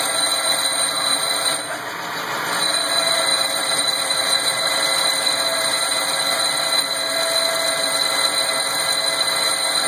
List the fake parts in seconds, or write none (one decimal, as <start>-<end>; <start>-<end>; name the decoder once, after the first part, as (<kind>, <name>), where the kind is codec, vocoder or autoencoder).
3.3-4.9 (vocoder, BigVGAN v2); 5.5-6.2